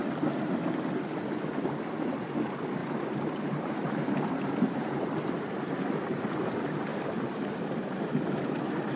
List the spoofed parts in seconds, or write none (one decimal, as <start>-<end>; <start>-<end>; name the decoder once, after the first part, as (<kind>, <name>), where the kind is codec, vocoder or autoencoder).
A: 2.8-6.5 (vocoder, BigVGAN v2); 6.9-7.6